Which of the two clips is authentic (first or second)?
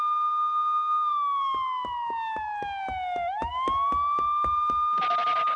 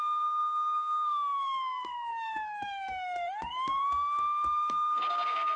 first